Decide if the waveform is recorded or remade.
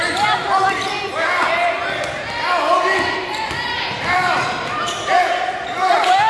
remade